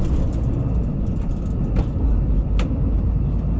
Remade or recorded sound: recorded